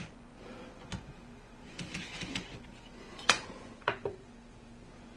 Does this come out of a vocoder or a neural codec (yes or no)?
yes